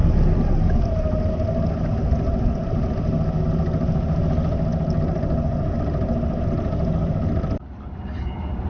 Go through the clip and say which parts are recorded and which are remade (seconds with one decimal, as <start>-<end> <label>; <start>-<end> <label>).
0.0-8.7 recorded